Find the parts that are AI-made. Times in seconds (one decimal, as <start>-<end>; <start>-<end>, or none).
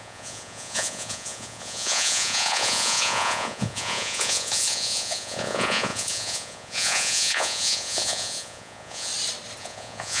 0.0-9.1; 9.6-10.2